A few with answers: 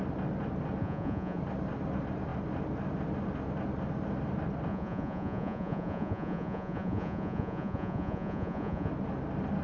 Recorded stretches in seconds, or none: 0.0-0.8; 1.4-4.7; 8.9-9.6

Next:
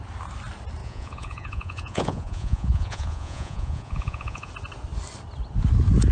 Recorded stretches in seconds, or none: 0.0-0.8; 4.5-6.1

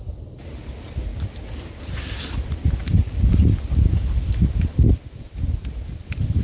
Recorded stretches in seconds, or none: 0.0-6.4

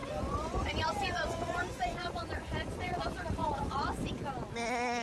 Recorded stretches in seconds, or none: 3.0-3.4; 4.1-5.0

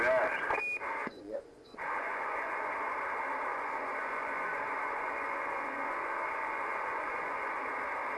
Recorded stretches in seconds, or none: 0.0-1.0; 2.7-3.5; 7.6-8.2

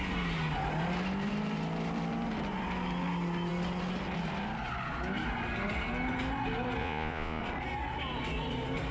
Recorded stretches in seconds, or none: 0.0-6.8; 7.4-8.9